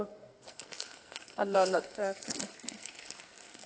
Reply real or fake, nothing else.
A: fake